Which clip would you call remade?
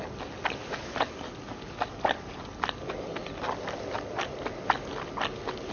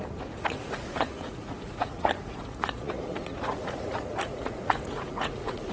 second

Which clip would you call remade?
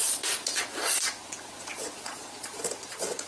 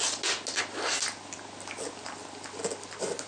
first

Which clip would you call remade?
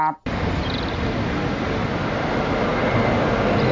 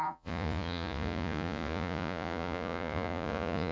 second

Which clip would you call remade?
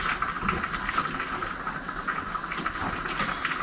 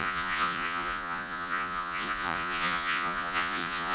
second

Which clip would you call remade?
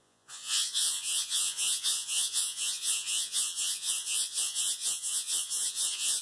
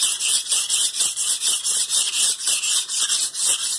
first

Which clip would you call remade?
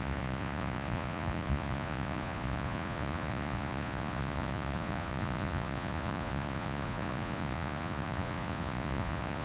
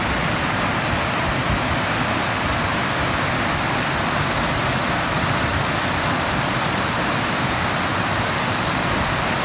first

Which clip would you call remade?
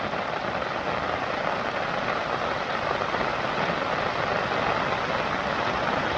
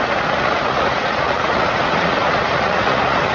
second